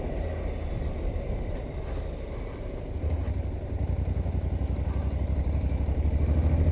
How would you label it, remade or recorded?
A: recorded